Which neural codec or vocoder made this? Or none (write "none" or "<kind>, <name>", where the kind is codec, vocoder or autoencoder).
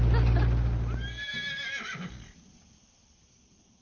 none